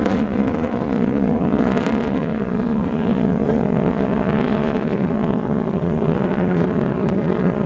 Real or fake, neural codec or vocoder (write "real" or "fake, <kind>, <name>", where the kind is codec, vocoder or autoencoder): fake, vocoder, Vocos